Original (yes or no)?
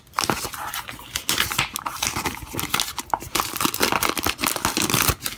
yes